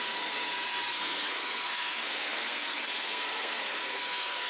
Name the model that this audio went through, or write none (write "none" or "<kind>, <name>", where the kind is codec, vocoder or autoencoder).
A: codec, SNAC